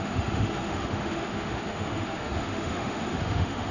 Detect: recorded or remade remade